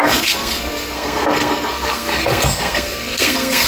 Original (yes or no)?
no